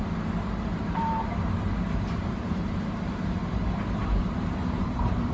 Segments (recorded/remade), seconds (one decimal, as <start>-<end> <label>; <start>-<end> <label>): 0.0-0.7 recorded; 0.7-3.0 remade; 3.0-3.4 recorded; 3.4-5.3 remade